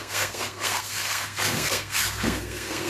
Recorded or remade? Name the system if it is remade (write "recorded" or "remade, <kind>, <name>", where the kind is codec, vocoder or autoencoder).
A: remade, codec, SNAC